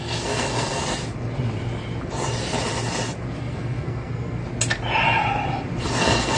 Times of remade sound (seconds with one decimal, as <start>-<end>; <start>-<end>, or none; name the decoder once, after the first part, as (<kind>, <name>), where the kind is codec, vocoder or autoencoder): 0.0-0.8 (codec, SNAC); 3.4-4.4; 6.0-6.4